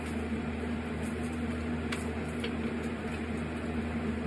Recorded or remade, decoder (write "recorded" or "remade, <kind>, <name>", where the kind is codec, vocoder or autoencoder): recorded